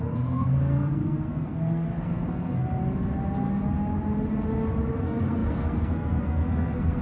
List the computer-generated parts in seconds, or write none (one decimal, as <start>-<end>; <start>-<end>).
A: 0.0-2.8; 5.0-7.0